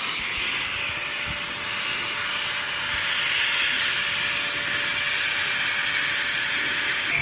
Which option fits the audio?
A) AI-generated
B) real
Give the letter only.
B